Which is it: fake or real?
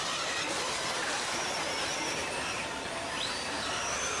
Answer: fake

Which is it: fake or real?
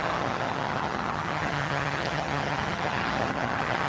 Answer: fake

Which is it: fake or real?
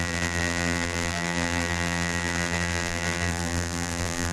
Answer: fake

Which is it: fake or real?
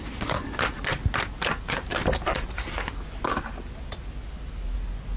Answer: real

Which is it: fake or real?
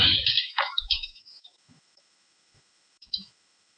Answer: fake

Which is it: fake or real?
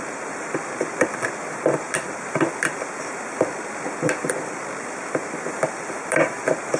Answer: real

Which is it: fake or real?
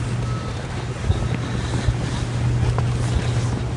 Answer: real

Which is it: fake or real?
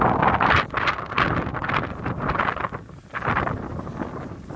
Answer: real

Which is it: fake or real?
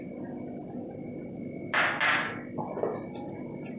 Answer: real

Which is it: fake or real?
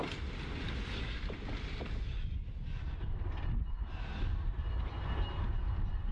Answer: real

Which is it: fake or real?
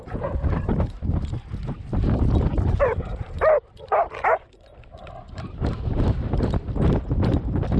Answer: fake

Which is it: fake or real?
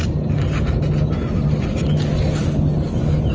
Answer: real